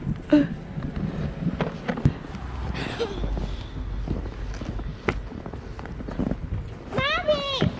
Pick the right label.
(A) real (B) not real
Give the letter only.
A